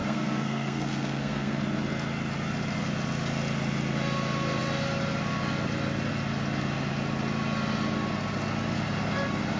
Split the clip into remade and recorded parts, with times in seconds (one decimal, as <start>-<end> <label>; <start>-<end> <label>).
0.0-1.6 remade; 1.6-9.6 recorded

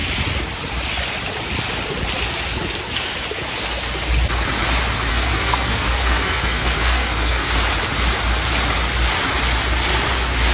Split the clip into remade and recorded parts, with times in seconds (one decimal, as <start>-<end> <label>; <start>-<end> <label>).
0.0-5.1 recorded; 5.1-7.5 remade; 7.5-10.5 recorded

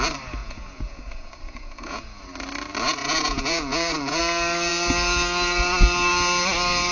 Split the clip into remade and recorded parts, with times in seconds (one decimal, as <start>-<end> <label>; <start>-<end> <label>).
0.0-0.4 recorded; 0.4-2.2 remade; 2.2-3.0 recorded; 3.0-4.2 remade; 4.2-6.9 recorded

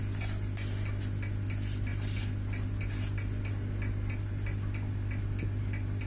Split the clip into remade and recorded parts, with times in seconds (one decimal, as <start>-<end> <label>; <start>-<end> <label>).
0.0-6.1 recorded

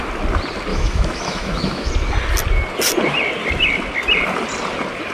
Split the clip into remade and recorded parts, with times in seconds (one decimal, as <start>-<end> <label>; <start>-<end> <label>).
0.0-0.7 recorded; 0.7-1.9 remade; 1.9-5.1 recorded

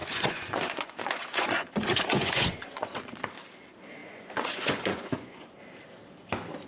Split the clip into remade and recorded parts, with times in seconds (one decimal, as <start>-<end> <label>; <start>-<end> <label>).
0.0-3.0 remade; 3.0-4.0 recorded; 4.0-5.6 remade; 5.6-6.7 recorded

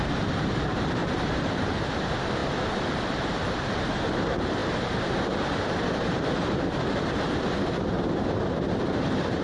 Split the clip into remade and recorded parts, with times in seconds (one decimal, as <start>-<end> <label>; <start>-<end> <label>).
0.0-9.4 remade

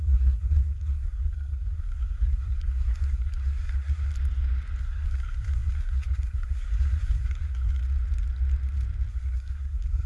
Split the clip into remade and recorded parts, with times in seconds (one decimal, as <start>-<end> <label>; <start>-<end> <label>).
0.0-4.1 remade; 4.1-4.8 recorded; 4.8-7.8 remade; 7.8-9.1 recorded; 9.1-10.1 remade